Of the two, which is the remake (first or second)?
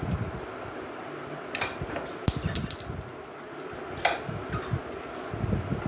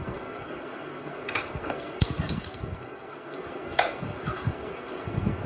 second